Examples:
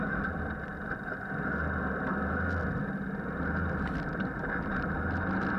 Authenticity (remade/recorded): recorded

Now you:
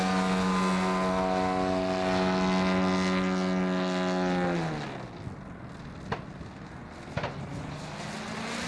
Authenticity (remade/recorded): recorded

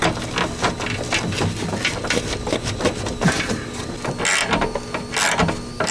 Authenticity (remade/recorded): recorded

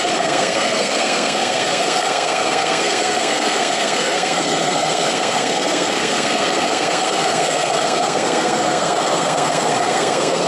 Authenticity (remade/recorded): remade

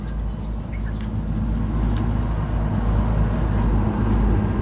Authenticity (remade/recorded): recorded